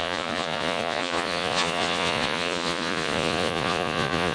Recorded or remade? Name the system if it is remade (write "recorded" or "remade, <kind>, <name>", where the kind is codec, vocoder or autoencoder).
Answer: remade, vocoder, Vocos